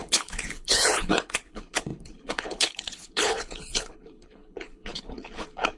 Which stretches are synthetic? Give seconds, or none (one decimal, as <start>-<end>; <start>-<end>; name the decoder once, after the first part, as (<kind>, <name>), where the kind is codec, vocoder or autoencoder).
0.0-5.8 (codec, HILCodec)